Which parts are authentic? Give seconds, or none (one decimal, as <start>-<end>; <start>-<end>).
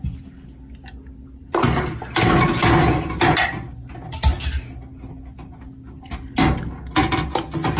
0.0-7.8